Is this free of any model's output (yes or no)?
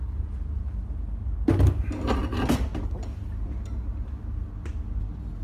yes